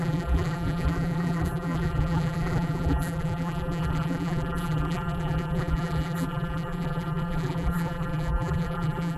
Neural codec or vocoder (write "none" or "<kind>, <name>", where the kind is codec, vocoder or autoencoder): vocoder, BigVGAN v2